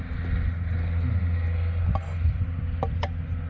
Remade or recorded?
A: recorded